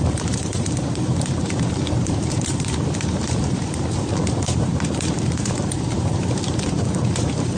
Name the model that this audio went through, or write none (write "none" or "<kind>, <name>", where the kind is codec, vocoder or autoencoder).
vocoder, BigVGAN v2